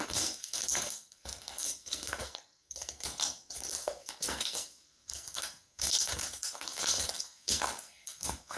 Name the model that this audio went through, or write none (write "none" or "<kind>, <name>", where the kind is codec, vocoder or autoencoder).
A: codec, SNAC